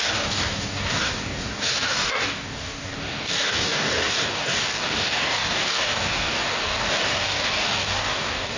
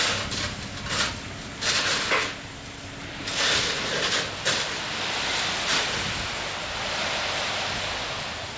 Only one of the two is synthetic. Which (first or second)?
first